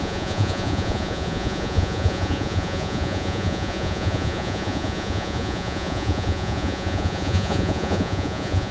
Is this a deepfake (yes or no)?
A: yes